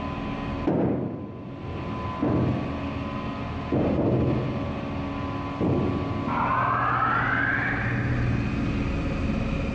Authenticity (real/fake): real